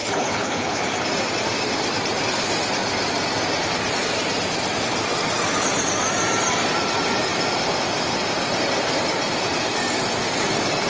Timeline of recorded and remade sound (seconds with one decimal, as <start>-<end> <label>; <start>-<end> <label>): 0.0-0.8 remade; 0.8-10.9 recorded